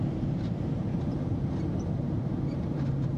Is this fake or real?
fake